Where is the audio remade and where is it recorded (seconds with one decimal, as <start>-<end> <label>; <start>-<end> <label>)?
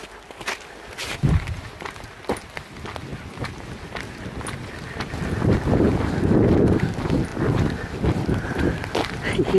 0.0-9.6 recorded